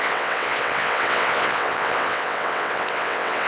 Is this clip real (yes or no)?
no